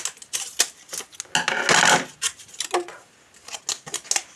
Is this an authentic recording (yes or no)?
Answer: yes